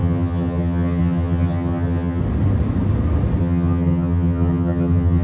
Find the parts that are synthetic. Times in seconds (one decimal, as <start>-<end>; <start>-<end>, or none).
0.0-2.2; 3.4-5.2